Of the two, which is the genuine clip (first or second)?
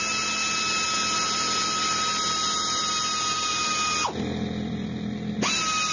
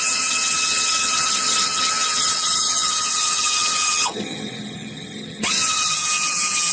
first